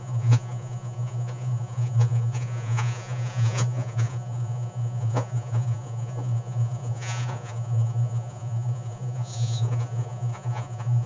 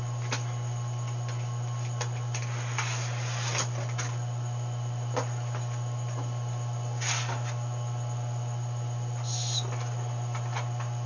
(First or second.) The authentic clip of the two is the second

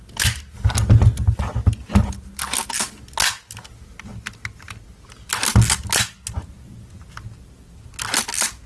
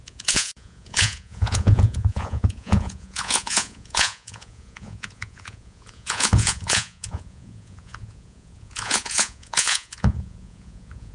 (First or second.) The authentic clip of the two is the first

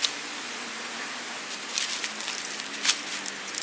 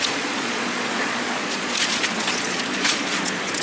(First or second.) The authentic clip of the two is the first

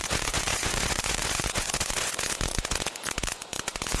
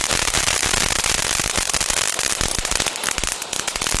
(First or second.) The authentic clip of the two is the second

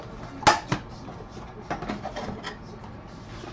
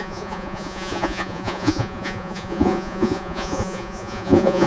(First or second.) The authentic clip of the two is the first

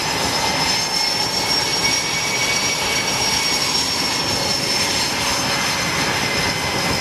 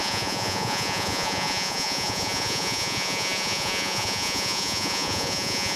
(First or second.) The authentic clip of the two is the first